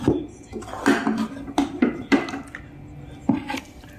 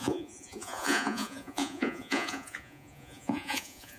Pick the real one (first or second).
first